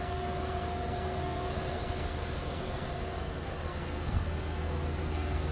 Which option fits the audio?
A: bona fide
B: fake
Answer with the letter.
B